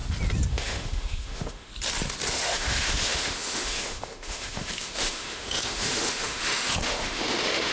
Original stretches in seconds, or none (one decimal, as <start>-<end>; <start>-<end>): 0.0-0.5; 1.7-2.3